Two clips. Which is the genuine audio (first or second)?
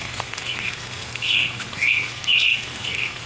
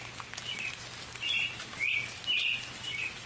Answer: second